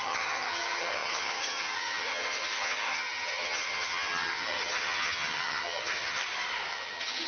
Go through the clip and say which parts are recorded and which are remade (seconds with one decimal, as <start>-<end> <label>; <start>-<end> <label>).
0.0-6.2 remade; 6.2-6.7 recorded; 6.7-7.3 remade